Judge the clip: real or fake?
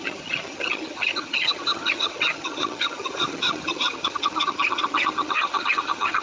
fake